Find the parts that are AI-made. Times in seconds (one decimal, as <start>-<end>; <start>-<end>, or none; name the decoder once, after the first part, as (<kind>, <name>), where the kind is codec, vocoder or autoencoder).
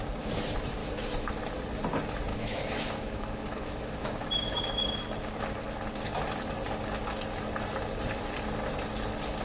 0.8-1.3 (autoencoder, DAC-VAE); 2.3-4.6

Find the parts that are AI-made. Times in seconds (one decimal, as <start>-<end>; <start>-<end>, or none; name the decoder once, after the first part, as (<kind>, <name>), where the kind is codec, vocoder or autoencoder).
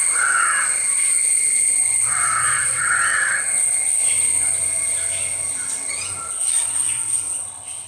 0.0-1.1 (vocoder, WaveNeXt); 1.9-4.0; 6.3-7.9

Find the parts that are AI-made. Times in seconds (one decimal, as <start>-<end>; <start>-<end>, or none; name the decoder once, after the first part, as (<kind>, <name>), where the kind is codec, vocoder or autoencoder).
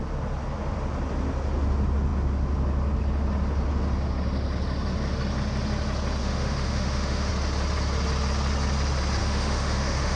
6.2-7.3 (autoencoder, DAC-VAE); 9.2-10.2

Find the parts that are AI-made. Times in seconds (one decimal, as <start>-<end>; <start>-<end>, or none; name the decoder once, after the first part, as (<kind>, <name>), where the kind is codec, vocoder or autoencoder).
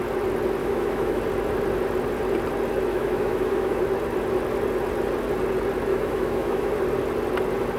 0.6-1.2 (autoencoder, DAC-VAE); 2.9-3.8; 5.9-6.7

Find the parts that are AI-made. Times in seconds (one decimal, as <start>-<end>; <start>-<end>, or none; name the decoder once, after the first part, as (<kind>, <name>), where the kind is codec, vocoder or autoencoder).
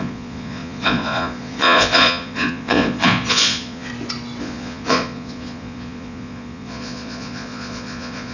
0.0-3.9 (vocoder, Vocos); 4.4-8.3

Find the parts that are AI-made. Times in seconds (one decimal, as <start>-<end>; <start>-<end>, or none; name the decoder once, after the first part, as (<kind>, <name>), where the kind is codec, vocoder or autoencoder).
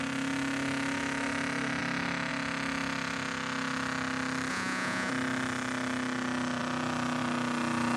4.5-5.1 (vocoder, Vocos)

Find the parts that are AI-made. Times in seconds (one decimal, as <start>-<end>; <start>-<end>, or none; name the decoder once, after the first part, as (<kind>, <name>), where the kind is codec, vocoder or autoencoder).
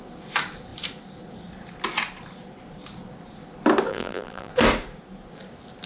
3.9-4.5 (vocoder, BigVGAN v2)